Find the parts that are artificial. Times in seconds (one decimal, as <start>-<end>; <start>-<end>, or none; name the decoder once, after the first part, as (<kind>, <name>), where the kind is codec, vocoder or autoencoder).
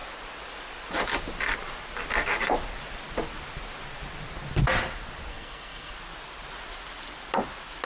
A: 5.3-5.9 (codec, SNAC)